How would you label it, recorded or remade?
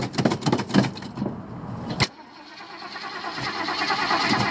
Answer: recorded